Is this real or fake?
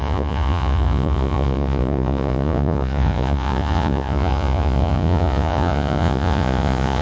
fake